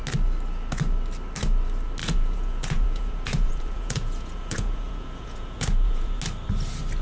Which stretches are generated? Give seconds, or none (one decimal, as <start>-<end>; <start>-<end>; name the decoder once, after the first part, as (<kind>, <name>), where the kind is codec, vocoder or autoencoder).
2.0-6.2 (vocoder, Vocos)